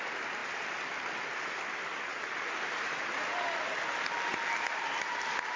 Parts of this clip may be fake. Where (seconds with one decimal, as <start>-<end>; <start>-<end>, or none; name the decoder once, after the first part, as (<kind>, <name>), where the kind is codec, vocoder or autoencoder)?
none